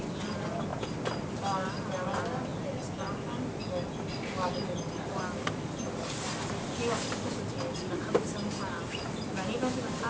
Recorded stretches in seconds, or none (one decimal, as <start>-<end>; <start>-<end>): 0.0-10.1